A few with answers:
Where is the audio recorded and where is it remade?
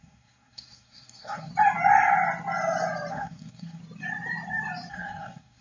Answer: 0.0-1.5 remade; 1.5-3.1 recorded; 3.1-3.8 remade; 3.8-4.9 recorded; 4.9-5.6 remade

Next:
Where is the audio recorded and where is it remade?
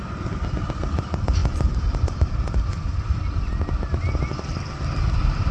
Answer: 0.0-5.5 recorded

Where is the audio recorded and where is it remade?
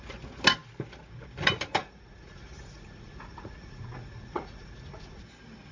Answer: 0.0-1.8 recorded; 1.8-5.2 remade; 5.2-5.7 recorded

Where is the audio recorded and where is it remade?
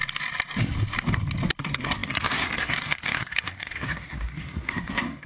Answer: 0.0-1.6 recorded; 1.6-5.3 remade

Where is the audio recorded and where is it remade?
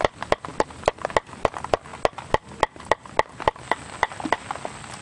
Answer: 0.0-5.0 recorded